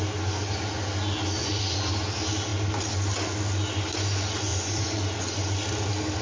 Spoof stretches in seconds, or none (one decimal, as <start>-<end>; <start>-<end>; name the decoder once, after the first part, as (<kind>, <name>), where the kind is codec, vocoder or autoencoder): 1.4-1.9 (vocoder, Vocos); 4.5-5.5